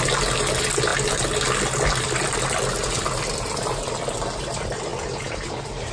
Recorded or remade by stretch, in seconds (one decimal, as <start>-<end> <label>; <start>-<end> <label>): 0.0-5.9 recorded